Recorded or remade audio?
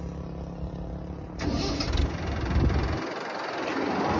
recorded